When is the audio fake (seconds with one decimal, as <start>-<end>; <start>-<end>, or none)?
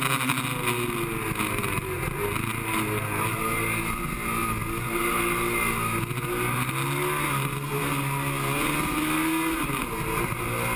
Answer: none